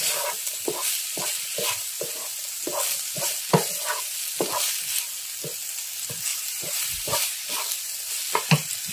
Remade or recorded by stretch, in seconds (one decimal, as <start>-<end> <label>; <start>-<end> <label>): 0.0-6.3 recorded; 6.3-7.4 remade; 7.4-8.9 recorded